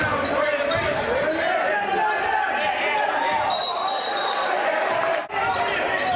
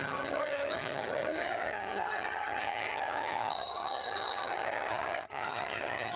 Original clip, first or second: first